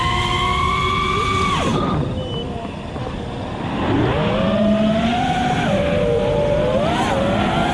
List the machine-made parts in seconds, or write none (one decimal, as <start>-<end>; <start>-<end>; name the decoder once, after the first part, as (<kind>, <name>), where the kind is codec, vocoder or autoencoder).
none